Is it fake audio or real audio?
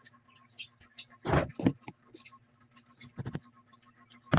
real